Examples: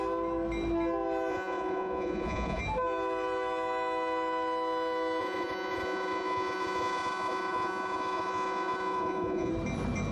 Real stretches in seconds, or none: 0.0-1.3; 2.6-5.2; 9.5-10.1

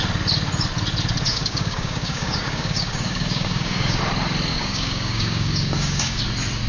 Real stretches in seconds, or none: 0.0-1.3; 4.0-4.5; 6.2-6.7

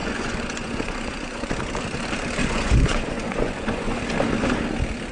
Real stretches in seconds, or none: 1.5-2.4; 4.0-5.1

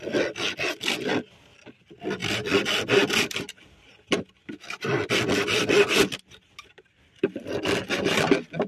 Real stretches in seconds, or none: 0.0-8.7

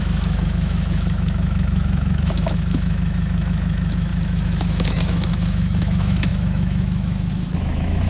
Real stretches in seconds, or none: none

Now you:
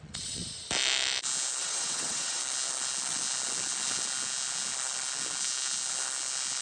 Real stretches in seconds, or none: 0.4-1.6; 2.4-6.6

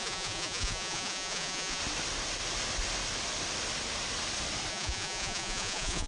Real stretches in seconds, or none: 1.8-4.7

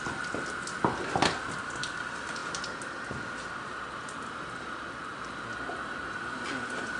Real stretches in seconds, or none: 2.4-3.5